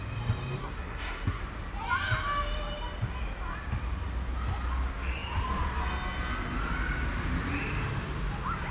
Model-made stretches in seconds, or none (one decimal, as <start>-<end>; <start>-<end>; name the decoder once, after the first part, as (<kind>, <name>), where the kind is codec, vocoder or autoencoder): 0.6-1.4 (codec, SNAC)